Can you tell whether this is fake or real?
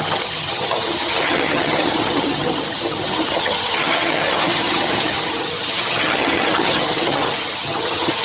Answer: fake